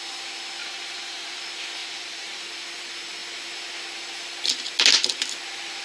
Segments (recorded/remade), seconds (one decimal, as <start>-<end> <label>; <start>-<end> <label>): 0.0-0.6 recorded; 0.6-1.4 remade; 1.4-1.8 recorded; 1.8-2.4 remade; 2.4-5.8 recorded